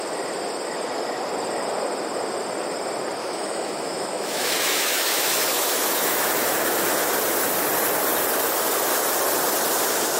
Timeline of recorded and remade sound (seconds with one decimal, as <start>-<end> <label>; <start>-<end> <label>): 0.0-3.2 recorded; 3.2-6.3 remade; 6.3-10.2 recorded